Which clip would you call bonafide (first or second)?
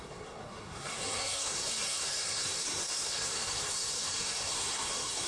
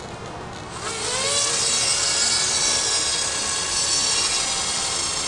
second